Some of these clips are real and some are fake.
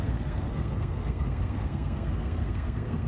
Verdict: fake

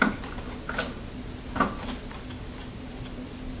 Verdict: real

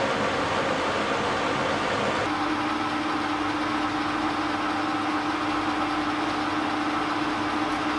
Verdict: real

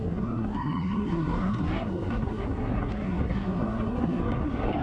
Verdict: fake